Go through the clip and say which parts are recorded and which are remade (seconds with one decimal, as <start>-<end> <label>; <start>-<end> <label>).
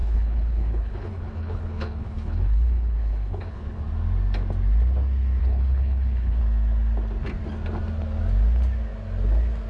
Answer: 0.0-3.8 remade; 3.8-5.4 recorded; 5.4-6.4 remade; 6.4-9.7 recorded